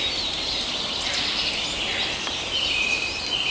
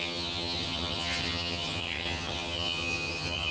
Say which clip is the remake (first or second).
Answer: second